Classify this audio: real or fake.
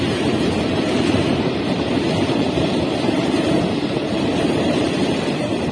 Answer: fake